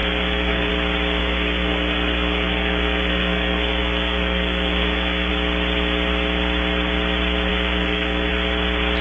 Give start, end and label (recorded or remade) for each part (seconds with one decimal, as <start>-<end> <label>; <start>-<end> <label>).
0.0-0.7 remade; 0.7-1.2 recorded; 1.2-5.3 remade; 5.3-7.5 recorded; 7.5-8.3 remade; 8.3-9.0 recorded